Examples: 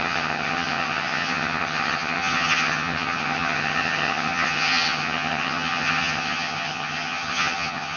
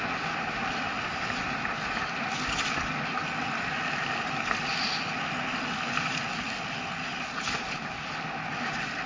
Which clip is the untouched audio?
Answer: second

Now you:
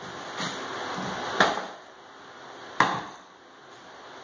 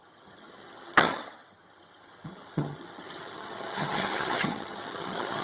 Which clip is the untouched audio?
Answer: first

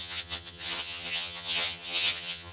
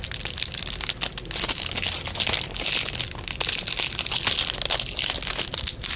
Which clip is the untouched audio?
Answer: second